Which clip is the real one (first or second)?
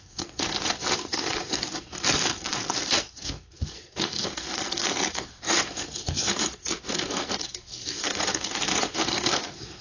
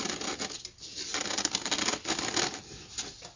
second